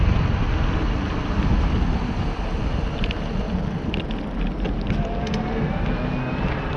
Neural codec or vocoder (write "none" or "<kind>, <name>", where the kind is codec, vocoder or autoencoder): none